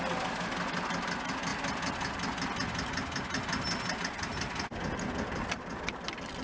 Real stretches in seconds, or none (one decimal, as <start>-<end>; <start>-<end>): 0.0-6.4